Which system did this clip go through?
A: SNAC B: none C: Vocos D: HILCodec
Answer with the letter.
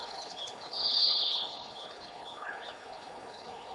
D